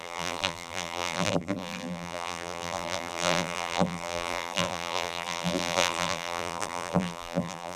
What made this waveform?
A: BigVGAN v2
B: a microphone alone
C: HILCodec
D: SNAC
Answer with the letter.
A